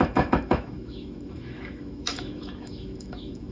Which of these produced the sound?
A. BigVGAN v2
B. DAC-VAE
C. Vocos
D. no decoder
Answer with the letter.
B